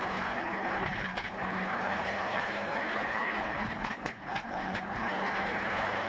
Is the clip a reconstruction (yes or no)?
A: yes